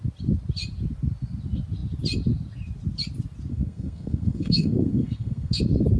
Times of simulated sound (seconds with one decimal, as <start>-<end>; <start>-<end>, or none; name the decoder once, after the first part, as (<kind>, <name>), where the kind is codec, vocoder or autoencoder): 3.5-5.6 (codec, SNAC)